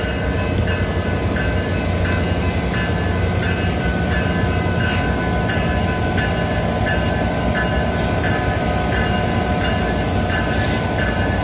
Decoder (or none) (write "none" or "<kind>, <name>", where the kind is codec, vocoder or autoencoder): none